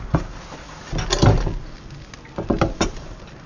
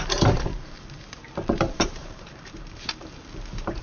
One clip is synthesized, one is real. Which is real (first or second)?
first